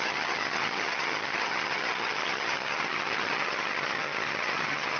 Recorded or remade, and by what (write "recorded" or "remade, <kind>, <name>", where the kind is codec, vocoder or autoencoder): remade, vocoder, HiFi-GAN